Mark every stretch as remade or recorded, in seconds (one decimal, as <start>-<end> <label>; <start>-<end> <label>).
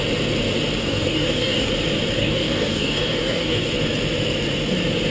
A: 0.0-0.8 recorded; 0.8-1.7 remade; 1.7-2.2 recorded; 2.2-3.7 remade; 3.7-5.1 recorded